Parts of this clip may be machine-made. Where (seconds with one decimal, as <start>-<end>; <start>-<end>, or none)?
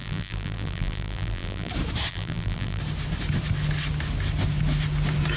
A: 0.0-1.7; 2.1-2.8